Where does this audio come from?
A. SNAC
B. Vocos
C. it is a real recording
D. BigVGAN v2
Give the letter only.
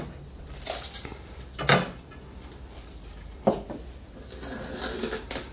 C